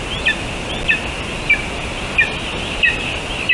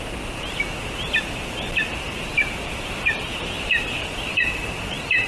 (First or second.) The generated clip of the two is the second